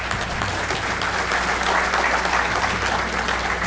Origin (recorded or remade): recorded